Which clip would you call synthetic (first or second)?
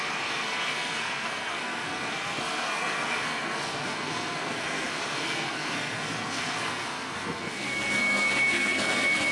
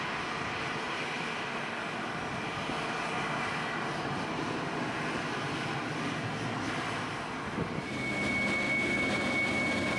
first